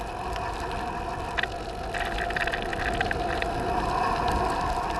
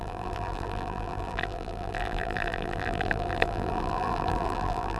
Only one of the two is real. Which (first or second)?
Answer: first